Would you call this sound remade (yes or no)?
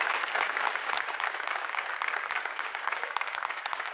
yes